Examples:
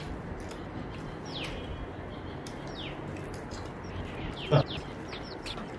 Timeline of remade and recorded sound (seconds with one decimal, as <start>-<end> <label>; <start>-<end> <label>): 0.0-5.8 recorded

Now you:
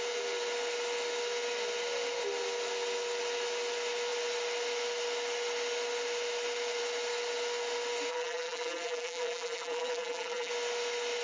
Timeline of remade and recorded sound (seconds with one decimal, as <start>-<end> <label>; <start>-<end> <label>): 0.0-8.1 recorded; 8.1-10.5 remade; 10.5-11.2 recorded

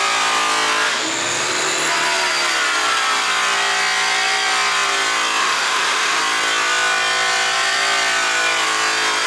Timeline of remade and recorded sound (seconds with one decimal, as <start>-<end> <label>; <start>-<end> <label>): 0.0-5.4 recorded; 5.4-6.2 remade; 6.2-9.3 recorded

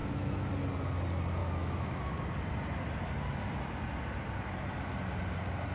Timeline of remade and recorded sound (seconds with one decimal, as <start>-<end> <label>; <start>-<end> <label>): 0.0-0.5 remade; 0.5-1.4 recorded; 1.4-2.0 remade; 2.0-5.7 recorded

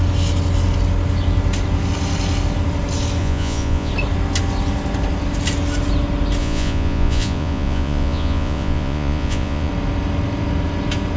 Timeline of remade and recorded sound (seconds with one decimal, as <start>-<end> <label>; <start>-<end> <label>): 0.0-3.2 recorded; 3.2-3.9 remade; 3.9-6.4 recorded; 6.4-9.7 remade; 9.7-11.2 recorded